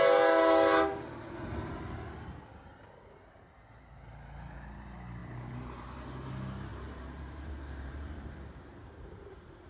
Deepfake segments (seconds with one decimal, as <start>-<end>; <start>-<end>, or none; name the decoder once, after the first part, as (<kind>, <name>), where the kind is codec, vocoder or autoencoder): 5.2-6.3 (vocoder, BigVGAN v2); 6.7-9.7